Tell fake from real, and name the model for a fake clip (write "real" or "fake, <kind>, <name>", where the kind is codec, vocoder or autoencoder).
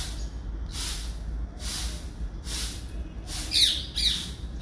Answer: real